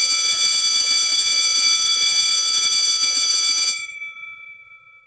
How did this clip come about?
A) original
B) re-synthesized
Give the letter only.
B